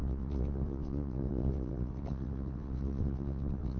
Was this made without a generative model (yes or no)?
no